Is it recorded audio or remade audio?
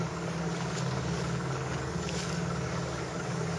remade